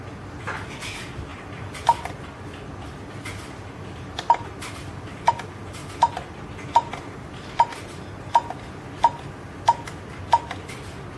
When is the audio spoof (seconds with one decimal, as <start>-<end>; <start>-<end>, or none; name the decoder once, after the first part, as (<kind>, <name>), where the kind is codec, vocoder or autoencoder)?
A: none